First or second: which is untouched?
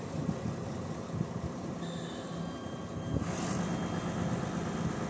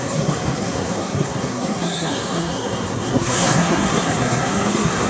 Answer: first